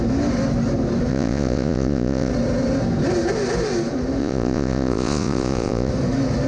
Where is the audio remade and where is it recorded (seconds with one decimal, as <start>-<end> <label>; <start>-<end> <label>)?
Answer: 0.0-1.1 recorded; 1.1-2.3 remade; 2.3-4.2 recorded; 4.2-5.9 remade; 5.9-6.5 recorded